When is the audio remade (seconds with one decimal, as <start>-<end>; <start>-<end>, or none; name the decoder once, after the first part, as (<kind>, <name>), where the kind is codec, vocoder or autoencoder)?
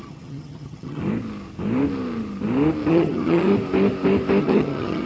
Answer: 0.0-1.0 (vocoder, HiFi-GAN); 2.9-3.5; 4.4-5.1